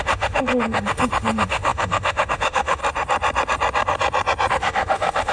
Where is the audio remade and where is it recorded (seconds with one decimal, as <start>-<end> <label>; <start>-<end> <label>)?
0.0-2.8 remade; 2.8-4.5 recorded; 4.5-5.3 remade